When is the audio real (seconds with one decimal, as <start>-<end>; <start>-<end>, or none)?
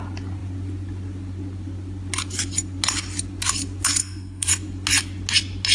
0.0-4.0; 4.5-5.7